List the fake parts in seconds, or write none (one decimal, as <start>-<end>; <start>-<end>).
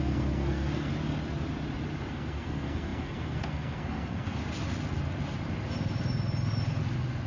0.0-0.9; 2.1-4.4